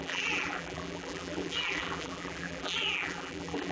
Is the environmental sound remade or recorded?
remade